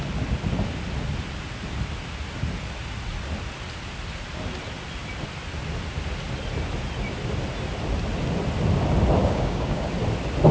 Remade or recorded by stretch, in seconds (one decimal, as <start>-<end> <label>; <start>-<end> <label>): 0.0-9.2 recorded; 9.2-9.9 remade; 9.9-10.5 recorded